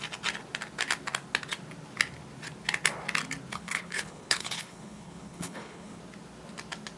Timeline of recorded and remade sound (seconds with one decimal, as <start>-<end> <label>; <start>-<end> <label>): 0.0-3.5 recorded; 3.5-6.0 remade; 6.0-7.0 recorded